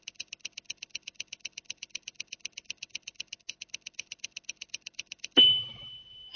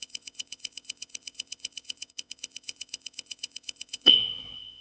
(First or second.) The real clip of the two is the first